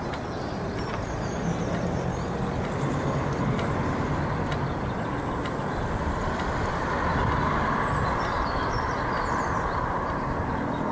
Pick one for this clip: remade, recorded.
recorded